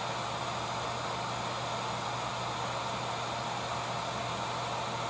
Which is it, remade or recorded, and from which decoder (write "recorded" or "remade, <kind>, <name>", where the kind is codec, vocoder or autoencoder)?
recorded